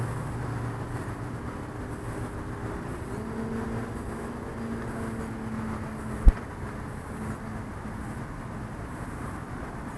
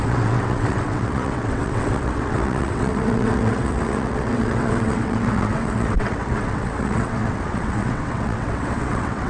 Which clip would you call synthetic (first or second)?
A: second